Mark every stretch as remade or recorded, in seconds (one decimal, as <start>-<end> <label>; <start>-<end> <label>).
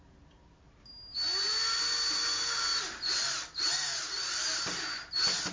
0.0-5.5 recorded